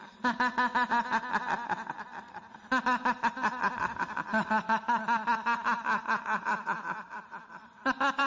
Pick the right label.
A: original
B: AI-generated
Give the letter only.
A